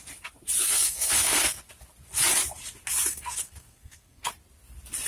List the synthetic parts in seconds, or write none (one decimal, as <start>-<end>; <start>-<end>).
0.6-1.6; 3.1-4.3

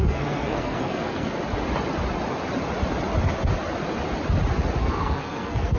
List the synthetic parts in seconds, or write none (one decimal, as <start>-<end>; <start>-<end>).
0.0-1.4; 4.8-5.8

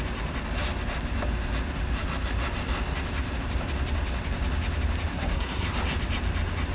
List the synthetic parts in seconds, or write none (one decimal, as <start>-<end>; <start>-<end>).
5.1-5.7

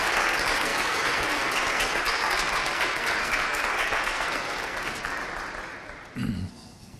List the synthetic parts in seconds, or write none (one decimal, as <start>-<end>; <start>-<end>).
0.0-5.2; 6.5-7.0

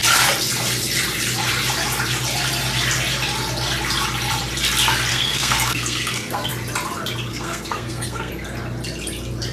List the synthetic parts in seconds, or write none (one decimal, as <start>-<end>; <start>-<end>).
5.1-6.5; 7.3-8.3